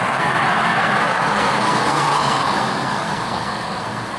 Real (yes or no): no